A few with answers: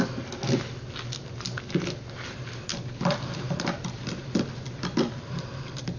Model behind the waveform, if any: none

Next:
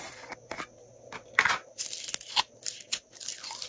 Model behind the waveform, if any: none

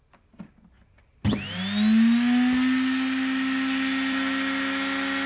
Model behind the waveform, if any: none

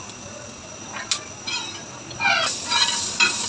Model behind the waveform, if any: none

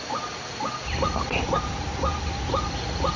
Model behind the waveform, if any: none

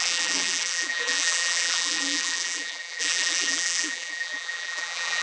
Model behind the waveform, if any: vocoder, BigVGAN v2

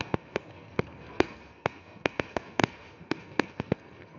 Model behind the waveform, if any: codec, SNAC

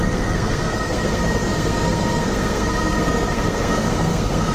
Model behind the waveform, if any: codec, SNAC